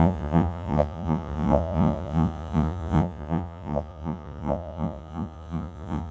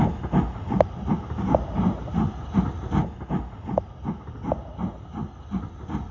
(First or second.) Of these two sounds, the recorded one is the second